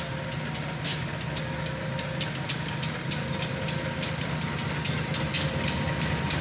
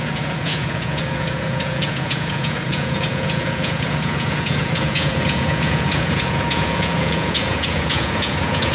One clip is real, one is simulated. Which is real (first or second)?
first